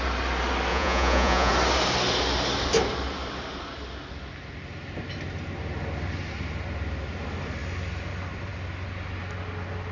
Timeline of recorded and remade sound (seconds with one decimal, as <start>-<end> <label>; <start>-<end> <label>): 0.0-0.7 recorded; 0.7-1.5 remade; 1.5-9.9 recorded